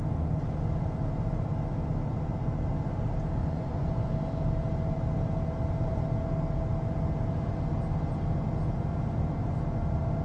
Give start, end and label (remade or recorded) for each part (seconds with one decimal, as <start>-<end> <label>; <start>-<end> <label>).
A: 0.0-3.4 recorded; 3.4-4.1 remade; 4.1-10.2 recorded